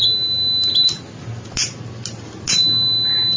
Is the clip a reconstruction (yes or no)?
no